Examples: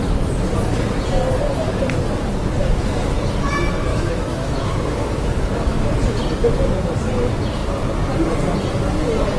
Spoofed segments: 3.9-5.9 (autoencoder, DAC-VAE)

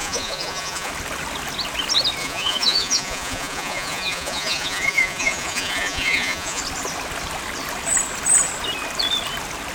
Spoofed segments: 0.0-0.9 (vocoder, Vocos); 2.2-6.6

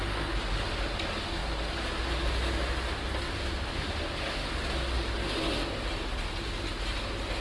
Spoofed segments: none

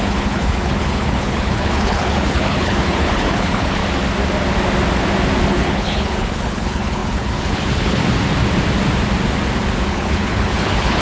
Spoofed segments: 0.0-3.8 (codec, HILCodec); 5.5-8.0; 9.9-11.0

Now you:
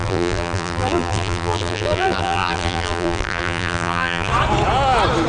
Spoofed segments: 0.0-4.3 (vocoder, BigVGAN v2)